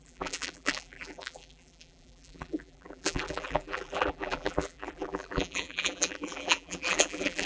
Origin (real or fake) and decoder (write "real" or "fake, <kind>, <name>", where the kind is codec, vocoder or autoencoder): fake, vocoder, BigVGAN v2